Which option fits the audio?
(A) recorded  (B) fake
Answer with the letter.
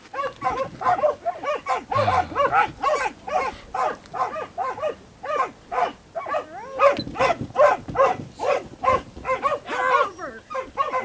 A